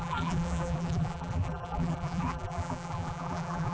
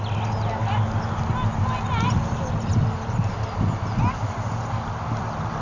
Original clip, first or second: second